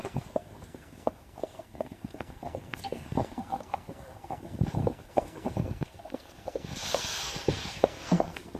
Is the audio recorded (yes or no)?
no